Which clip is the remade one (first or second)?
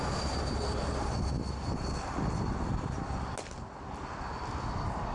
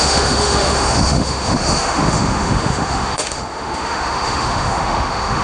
second